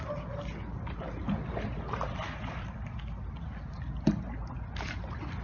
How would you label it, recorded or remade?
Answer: recorded